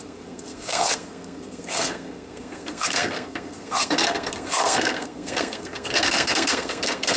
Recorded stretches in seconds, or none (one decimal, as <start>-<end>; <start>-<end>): none